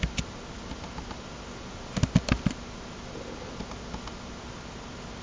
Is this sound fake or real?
real